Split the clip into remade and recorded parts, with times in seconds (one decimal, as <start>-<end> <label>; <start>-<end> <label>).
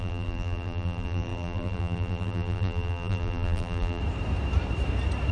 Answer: 0.0-4.0 remade; 4.0-5.3 recorded